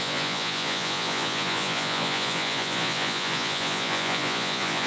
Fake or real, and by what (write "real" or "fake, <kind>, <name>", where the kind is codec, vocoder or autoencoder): fake, vocoder, Vocos